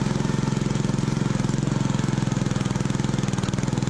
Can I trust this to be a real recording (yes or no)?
yes